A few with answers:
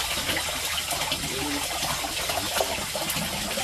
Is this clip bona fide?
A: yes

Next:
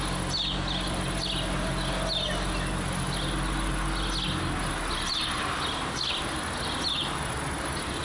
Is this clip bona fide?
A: yes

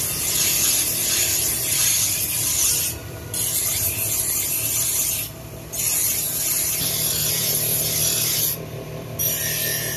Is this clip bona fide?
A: no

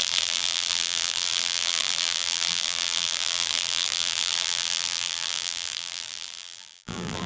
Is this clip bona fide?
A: no